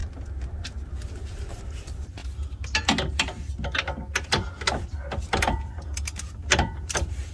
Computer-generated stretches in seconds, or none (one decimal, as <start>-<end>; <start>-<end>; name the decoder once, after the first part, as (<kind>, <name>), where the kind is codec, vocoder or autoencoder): 1.5-2.2 (vocoder, BigVGAN v2); 5.3-7.3